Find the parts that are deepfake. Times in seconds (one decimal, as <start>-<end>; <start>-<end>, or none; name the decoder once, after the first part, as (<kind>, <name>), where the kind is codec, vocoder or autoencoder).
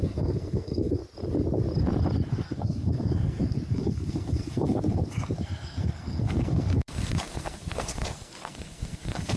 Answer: 0.0-1.0 (codec, SNAC); 2.3-9.4